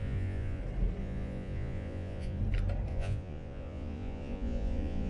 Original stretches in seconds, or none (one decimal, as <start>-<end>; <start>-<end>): 0.6-1.0; 2.4-2.9